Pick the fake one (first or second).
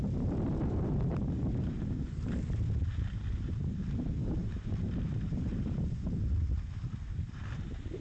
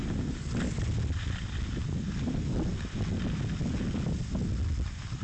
first